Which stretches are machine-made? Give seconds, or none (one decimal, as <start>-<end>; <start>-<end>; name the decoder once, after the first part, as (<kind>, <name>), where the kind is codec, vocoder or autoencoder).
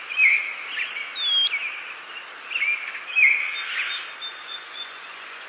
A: 4.3-5.5 (vocoder, Vocos)